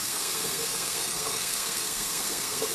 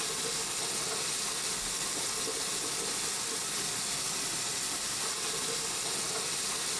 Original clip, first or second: second